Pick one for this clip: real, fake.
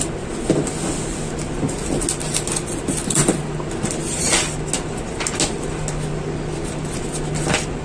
real